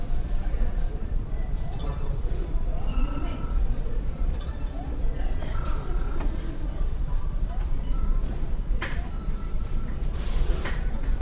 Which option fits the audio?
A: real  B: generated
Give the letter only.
B